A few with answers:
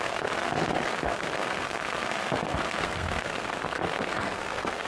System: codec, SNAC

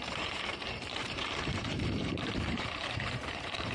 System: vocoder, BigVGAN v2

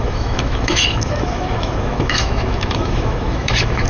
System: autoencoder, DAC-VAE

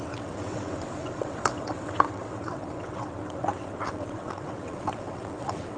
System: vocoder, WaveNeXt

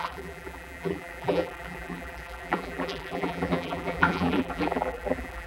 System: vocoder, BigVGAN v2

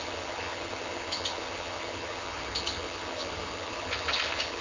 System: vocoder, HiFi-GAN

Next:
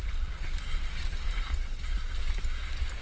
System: none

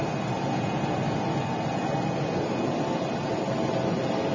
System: none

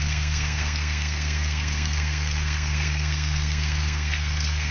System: codec, SNAC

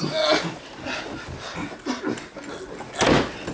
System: none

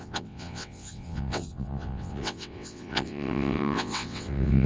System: vocoder, WaveNeXt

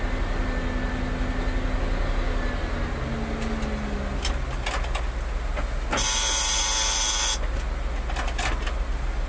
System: none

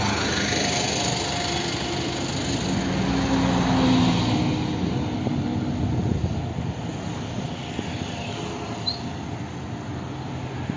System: none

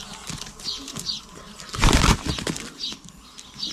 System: none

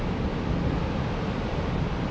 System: none